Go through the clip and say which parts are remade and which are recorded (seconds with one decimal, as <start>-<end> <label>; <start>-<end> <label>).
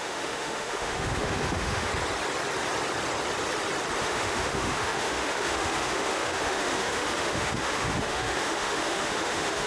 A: 0.0-1.9 remade; 1.9-4.0 recorded; 4.0-9.7 remade